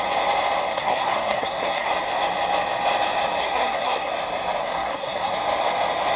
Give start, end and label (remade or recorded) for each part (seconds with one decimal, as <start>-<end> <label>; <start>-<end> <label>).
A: 0.0-0.7 recorded; 0.7-1.9 remade; 1.9-3.4 recorded; 3.4-4.1 remade; 4.1-4.6 recorded; 4.6-5.3 remade; 5.3-6.2 recorded